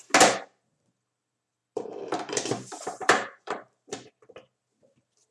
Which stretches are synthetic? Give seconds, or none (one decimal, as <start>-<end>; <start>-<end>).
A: 1.6-4.1